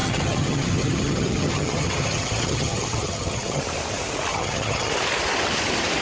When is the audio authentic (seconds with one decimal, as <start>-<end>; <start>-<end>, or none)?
3.6-4.3; 4.9-6.0